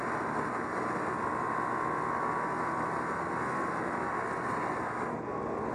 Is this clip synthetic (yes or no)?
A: no